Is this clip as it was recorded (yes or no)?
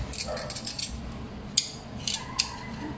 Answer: yes